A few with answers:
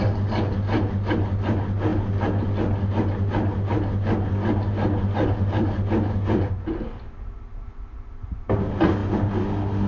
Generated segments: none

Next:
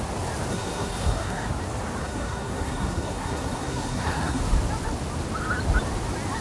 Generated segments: 0.5-1.5 (codec, SNAC); 2.0-4.4

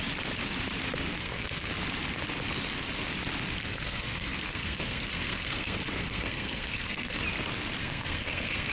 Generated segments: 1.1-1.7 (codec, SNAC); 3.6-7.2; 7.8-8.7

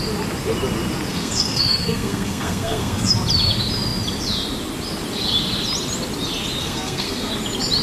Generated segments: 1.1-3.1 (codec, SNAC); 6.6-7.3

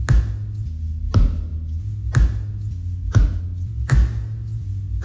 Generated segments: none